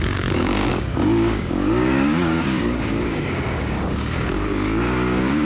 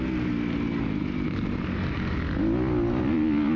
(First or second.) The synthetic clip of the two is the first